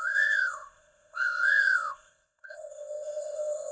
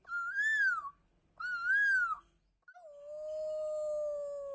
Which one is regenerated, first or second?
first